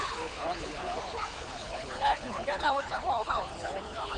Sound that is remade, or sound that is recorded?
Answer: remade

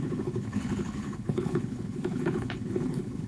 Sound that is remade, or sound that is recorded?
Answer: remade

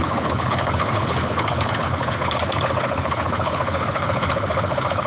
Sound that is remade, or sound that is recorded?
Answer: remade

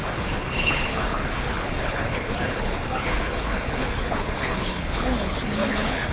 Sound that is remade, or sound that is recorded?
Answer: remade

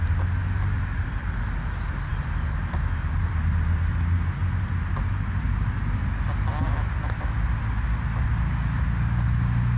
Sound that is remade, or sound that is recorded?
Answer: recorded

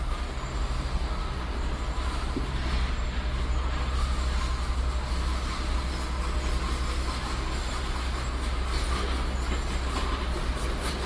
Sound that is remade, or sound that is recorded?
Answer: recorded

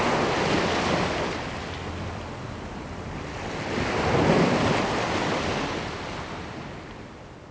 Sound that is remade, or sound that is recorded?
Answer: recorded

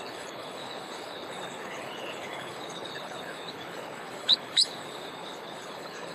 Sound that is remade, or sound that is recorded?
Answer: remade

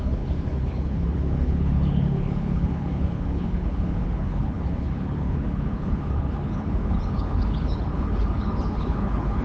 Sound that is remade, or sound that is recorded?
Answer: remade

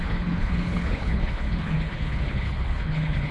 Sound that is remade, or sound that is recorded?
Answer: remade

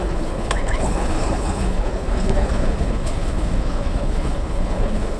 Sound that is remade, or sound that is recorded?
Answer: remade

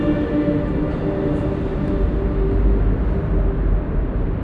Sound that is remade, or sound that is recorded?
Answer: recorded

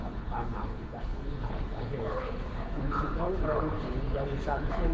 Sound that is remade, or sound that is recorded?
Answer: remade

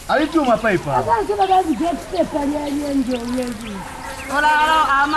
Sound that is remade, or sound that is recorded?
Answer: recorded